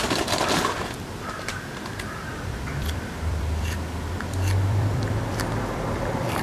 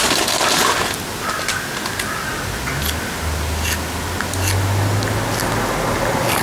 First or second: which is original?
second